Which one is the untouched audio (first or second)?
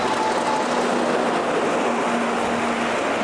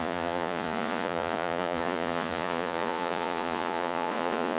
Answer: first